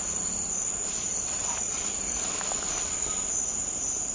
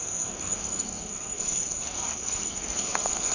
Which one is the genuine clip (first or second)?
first